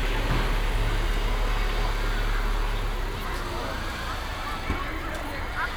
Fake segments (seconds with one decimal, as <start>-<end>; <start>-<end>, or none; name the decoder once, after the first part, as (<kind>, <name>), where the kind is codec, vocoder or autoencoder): none